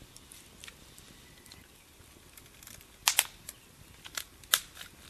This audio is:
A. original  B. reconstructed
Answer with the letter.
A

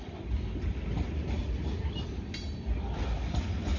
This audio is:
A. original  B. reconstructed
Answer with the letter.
A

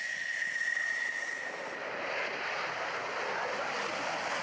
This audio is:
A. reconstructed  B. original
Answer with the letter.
B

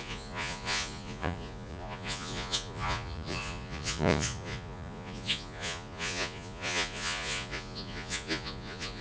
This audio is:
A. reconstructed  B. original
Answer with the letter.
A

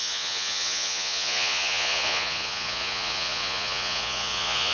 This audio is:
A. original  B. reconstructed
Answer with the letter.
B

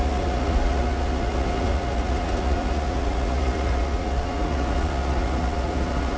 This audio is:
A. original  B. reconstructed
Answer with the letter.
B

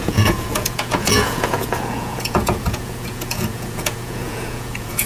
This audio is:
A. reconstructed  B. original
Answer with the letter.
A